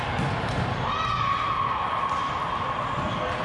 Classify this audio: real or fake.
real